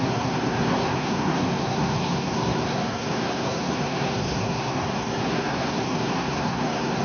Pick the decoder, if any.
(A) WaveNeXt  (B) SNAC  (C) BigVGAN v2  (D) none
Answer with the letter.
B